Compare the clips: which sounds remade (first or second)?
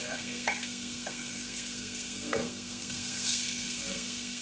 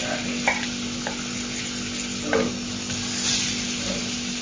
first